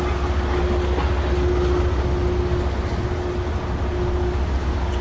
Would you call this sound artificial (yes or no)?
no